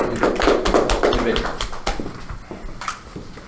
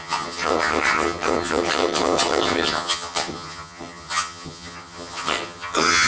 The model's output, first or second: second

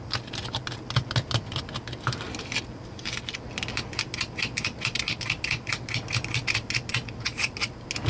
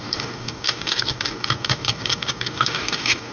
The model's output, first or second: second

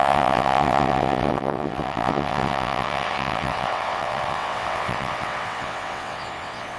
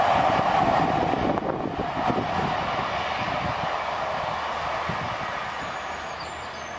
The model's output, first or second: first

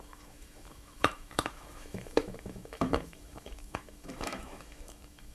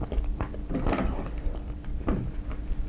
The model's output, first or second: first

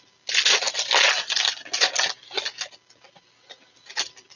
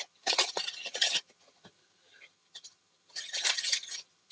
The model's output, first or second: second